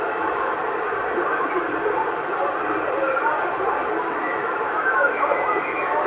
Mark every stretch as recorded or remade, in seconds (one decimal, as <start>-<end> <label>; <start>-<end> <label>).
0.0-0.6 remade; 0.6-4.1 recorded; 4.1-6.1 remade